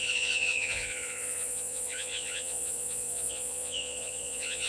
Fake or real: fake